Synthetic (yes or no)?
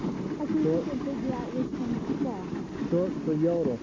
no